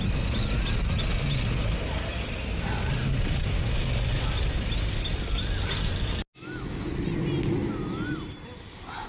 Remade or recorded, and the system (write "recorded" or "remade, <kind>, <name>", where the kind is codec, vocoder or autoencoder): recorded